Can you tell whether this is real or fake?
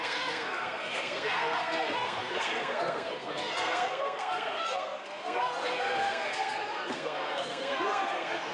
fake